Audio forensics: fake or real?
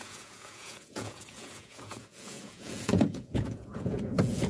fake